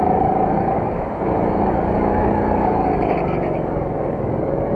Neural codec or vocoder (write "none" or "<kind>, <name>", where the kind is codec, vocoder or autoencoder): codec, DAC